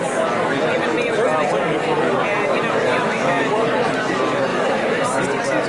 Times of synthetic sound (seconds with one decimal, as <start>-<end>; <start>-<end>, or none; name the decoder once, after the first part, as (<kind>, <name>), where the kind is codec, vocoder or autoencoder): 2.9-3.6 (autoencoder, DAC-VAE); 4.5-5.2

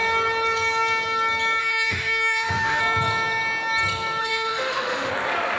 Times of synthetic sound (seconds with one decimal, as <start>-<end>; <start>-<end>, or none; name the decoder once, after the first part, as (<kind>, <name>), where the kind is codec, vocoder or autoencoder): 1.6-2.8 (autoencoder, DAC-VAE); 4.2-5.1

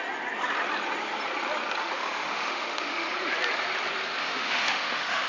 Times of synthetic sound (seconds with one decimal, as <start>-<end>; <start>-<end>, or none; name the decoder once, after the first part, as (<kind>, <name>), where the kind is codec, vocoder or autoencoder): 1.8-3.1 (autoencoder, DAC-VAE); 4.2-5.3

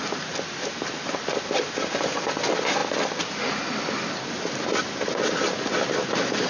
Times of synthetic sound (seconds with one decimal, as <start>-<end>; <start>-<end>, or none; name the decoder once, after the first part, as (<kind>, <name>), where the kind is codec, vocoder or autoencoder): none

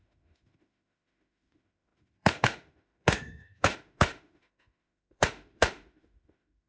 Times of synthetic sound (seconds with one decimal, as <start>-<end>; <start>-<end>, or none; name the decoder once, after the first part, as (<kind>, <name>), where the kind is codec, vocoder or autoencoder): 0.0-6.7 (autoencoder, DAC-VAE)

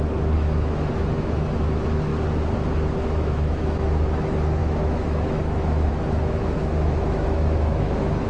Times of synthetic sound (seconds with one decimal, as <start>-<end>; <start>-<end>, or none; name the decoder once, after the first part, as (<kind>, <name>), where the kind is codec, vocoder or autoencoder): 0.0-2.1 (autoencoder, DAC-VAE); 3.0-8.3

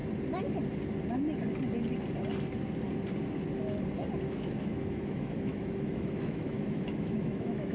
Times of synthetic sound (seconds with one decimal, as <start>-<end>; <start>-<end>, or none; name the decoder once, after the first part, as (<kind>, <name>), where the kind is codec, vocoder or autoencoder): 4.3-7.7 (autoencoder, DAC-VAE)

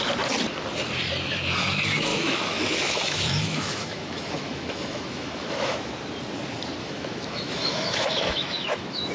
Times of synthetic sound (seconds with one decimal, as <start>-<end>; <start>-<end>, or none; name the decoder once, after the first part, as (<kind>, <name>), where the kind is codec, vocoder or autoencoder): 2.1-5.9 (autoencoder, DAC-VAE); 6.8-9.1